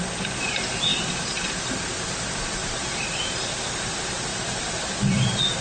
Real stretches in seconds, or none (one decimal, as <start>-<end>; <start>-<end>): 0.0-2.6; 3.3-4.3; 5.0-5.6